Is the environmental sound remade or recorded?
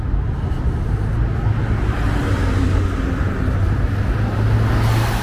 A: recorded